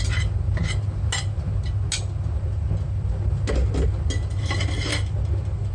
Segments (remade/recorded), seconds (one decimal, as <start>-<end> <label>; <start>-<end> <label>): 0.0-5.7 recorded